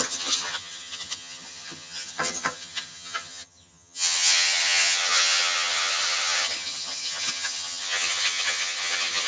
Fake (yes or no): yes